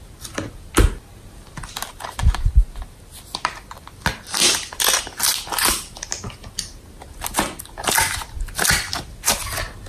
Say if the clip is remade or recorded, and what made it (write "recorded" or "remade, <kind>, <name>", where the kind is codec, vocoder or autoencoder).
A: recorded